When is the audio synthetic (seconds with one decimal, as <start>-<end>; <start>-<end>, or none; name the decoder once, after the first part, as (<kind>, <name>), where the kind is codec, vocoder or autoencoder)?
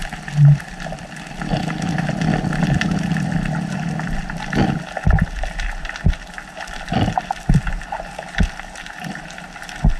none